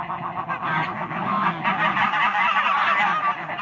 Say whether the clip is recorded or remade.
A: recorded